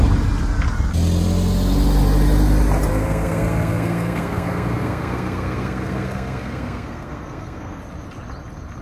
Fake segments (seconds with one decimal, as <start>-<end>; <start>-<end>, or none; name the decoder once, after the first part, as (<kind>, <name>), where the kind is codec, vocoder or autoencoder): 2.9-7.8 (codec, SNAC)